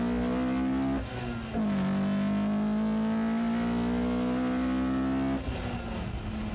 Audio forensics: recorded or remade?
recorded